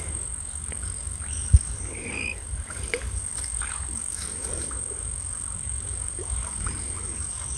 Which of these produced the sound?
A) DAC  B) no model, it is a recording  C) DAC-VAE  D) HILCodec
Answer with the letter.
A